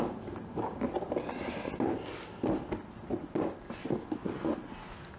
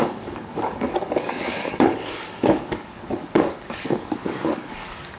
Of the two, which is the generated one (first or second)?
second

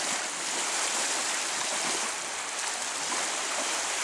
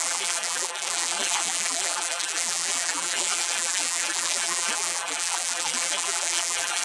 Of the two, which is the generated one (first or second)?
second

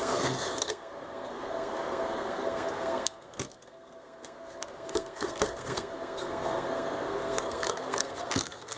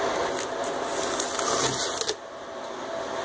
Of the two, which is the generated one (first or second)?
first